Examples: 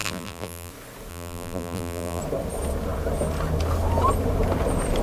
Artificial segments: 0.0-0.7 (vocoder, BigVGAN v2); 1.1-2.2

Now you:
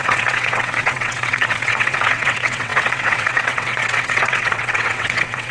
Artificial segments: 0.0-5.5 (vocoder, WaveNeXt)